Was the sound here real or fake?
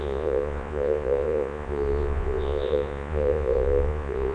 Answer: fake